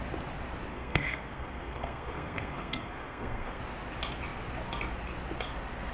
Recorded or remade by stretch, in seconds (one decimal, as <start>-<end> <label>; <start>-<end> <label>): 0.0-0.7 recorded; 0.7-3.6 remade; 3.6-5.9 recorded